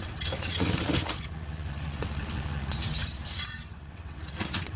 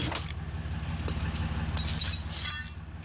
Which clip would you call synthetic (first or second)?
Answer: first